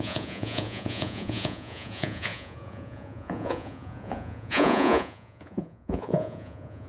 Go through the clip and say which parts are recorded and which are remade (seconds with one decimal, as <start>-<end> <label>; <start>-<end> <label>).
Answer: 0.0-6.9 remade